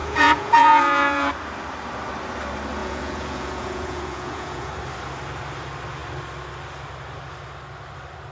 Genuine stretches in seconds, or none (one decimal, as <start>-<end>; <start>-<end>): 1.3-2.8; 4.7-8.3